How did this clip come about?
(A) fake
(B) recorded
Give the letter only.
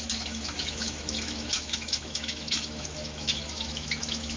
A